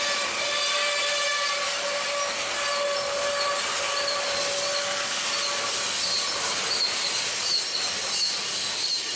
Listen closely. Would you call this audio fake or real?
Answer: real